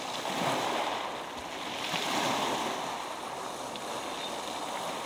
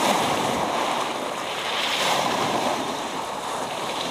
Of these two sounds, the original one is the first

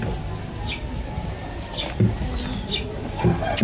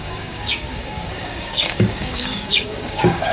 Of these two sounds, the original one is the first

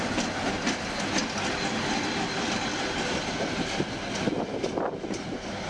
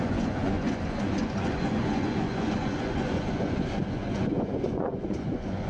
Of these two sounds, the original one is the first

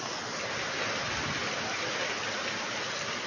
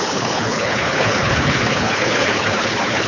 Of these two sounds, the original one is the first